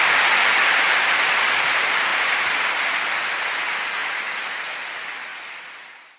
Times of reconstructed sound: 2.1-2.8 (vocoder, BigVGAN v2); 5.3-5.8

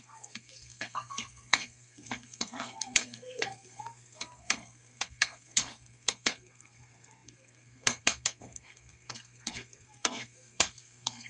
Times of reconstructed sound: 0.0-11.3 (codec, SNAC)

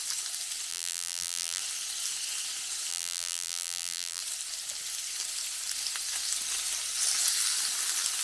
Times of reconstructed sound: 0.7-1.6 (vocoder, BigVGAN v2); 2.9-4.2